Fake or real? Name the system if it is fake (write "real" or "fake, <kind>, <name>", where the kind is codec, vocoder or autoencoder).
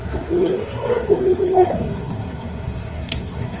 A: fake, codec, SNAC